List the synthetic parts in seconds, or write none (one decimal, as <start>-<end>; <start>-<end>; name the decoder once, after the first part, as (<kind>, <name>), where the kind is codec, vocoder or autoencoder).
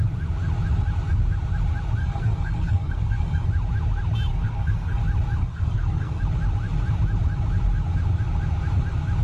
2.0-3.5 (codec, SNAC); 4.3-5.0; 5.4-6.2